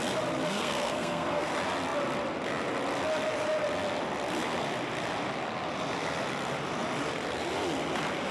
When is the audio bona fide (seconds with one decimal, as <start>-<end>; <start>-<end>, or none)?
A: 0.0-0.5; 1.5-8.3